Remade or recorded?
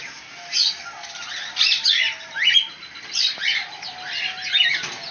recorded